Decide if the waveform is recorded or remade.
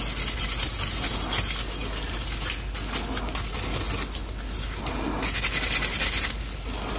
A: recorded